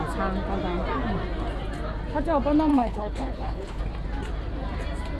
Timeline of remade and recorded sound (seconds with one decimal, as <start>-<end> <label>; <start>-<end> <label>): 0.0-2.7 recorded; 2.7-3.8 remade; 3.8-5.2 recorded